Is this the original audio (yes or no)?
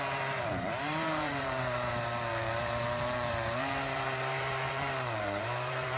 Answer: no